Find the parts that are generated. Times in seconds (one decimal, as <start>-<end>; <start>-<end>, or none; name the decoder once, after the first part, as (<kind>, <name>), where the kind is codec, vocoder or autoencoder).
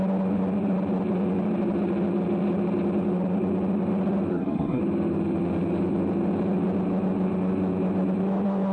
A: 4.3-4.8 (codec, SNAC)